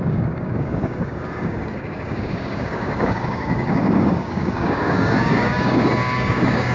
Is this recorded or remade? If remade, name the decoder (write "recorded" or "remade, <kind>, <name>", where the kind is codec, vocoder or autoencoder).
remade, codec, DAC